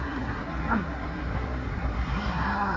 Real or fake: fake